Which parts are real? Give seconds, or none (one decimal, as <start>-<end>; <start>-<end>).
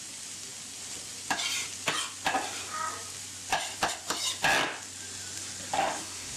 0.0-5.8